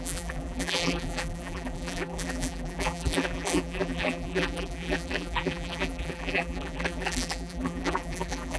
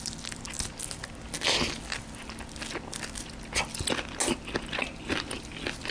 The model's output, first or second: first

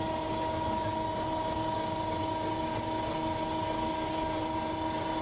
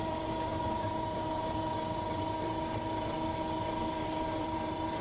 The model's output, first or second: second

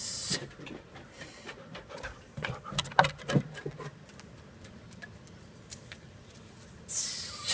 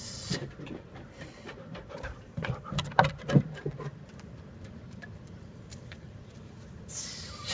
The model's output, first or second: second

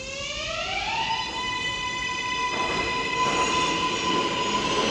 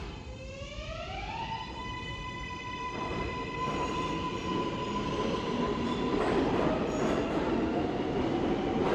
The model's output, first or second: second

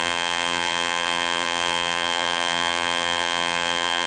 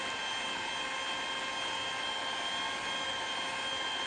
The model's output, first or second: first